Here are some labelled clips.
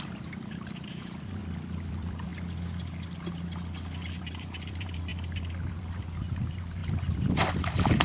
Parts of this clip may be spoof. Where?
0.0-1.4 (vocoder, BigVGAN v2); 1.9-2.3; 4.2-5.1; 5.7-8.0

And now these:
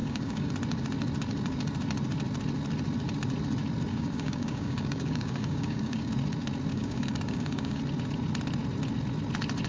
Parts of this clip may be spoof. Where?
0.0-0.5 (codec, DAC); 3.9-6.1; 6.7-7.8

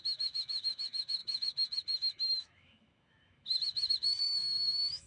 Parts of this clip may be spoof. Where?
0.0-5.1 (autoencoder, DAC-VAE)

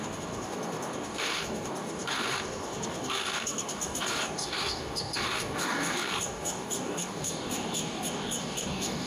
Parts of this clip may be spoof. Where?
0.0-9.1 (codec, DAC)

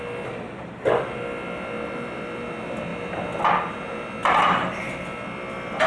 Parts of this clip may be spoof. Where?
none